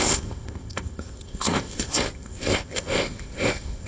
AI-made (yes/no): yes